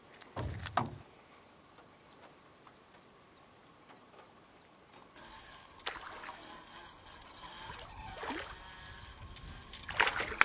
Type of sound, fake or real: real